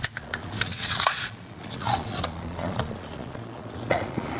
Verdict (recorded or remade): remade